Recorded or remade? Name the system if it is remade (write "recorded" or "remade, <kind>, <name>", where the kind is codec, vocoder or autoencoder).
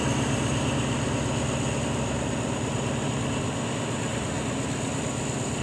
recorded